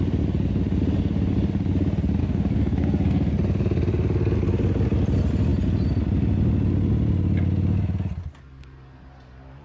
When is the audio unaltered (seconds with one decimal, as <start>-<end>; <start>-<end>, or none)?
0.0-2.2; 3.3-9.6